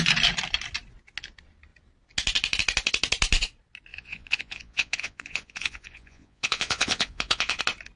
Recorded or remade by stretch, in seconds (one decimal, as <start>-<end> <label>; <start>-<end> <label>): 0.0-3.9 recorded; 3.9-7.6 remade; 7.6-8.0 recorded